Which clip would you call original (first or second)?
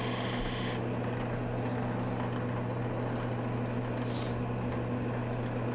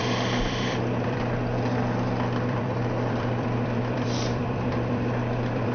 first